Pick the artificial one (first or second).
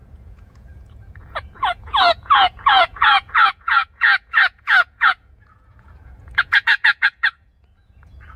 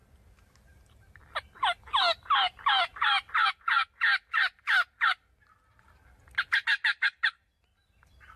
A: first